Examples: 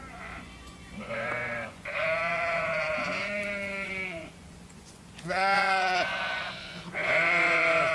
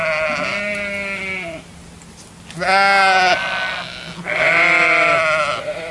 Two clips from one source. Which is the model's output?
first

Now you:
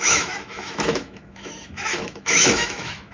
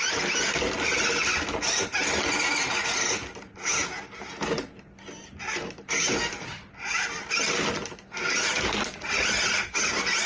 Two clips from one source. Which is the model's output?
first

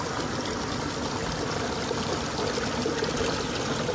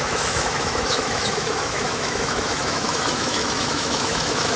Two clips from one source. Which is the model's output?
second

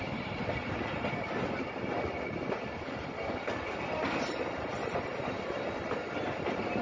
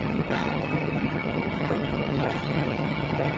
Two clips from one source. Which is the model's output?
second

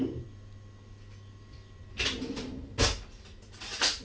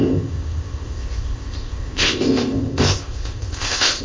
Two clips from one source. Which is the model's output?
second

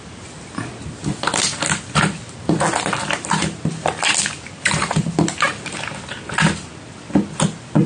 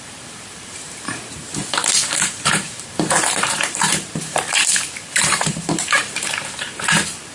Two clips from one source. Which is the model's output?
second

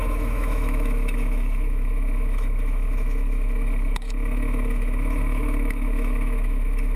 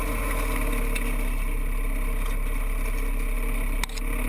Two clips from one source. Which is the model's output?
first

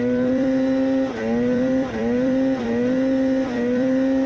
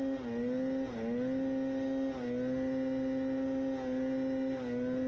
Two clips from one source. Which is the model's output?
first